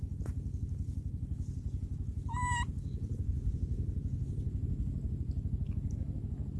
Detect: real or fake real